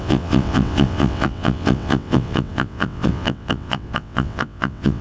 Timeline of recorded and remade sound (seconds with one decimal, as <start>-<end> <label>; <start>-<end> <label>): 0.0-5.0 remade